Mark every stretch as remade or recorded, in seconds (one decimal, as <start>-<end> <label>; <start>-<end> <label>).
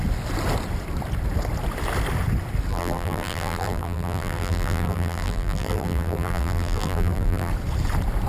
0.0-2.7 recorded; 2.7-7.5 remade; 7.5-8.3 recorded